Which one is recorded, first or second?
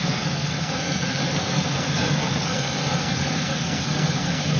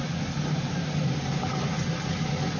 second